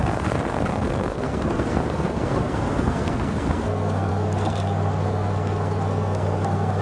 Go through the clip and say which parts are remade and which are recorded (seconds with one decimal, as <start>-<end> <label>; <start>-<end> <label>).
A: 0.0-6.8 remade